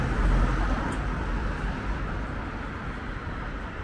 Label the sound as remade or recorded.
recorded